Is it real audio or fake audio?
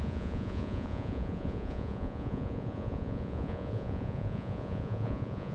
fake